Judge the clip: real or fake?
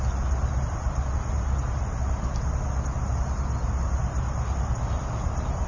real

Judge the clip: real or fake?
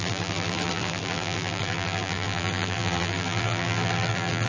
fake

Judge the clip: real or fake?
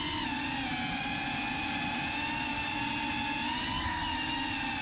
real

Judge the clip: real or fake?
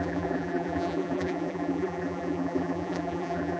fake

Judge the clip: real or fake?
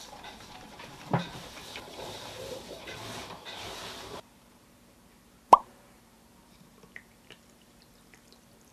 fake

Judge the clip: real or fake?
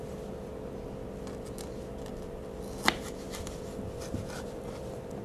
real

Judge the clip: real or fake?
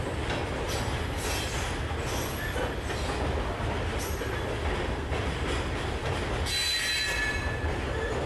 real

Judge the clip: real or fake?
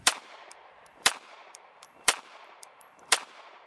fake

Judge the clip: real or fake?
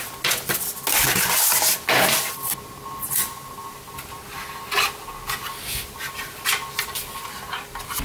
real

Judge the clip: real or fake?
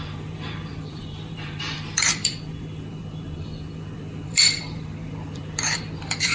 fake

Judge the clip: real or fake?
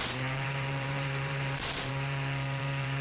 fake